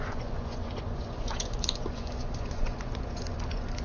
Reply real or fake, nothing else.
fake